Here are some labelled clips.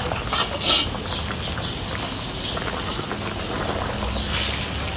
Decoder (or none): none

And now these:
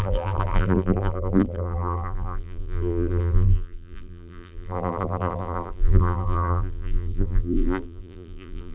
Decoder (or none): vocoder, BigVGAN v2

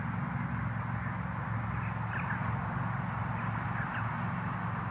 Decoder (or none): none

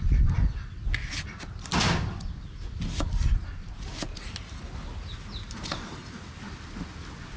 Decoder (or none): none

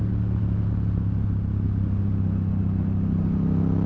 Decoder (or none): none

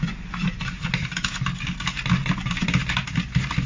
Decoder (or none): none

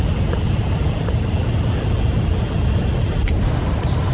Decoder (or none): none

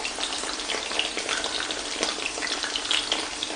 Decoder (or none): none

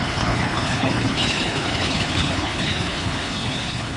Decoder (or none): codec, HILCodec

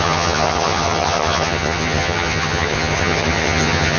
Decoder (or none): vocoder, HiFi-GAN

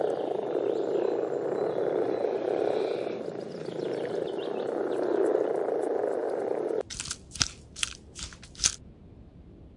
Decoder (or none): none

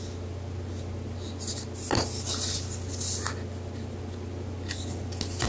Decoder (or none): none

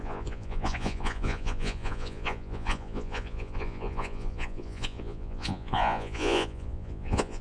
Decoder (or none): vocoder, Vocos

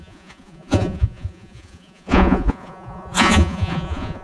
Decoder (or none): vocoder, Vocos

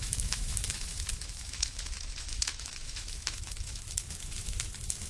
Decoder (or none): autoencoder, DAC-VAE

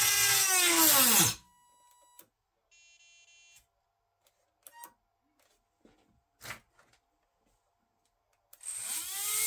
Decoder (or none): none